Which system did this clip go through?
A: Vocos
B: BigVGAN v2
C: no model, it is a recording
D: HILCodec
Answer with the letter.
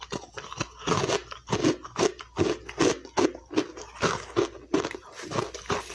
C